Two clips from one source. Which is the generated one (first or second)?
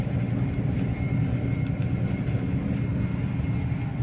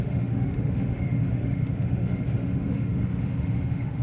second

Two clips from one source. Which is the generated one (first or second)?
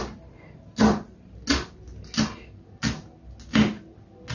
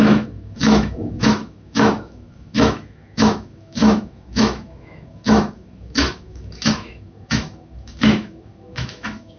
second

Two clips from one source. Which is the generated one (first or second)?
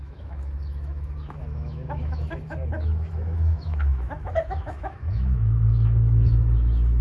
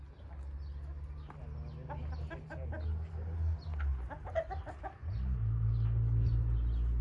first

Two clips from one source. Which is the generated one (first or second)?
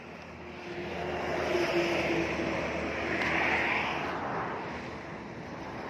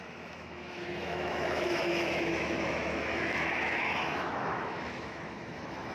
second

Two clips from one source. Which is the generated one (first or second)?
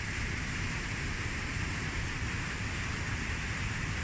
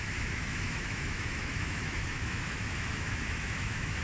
second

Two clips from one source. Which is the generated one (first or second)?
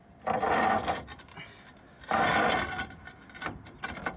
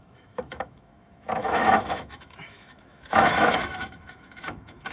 second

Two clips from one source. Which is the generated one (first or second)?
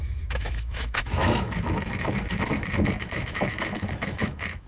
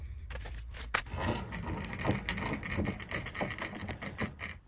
first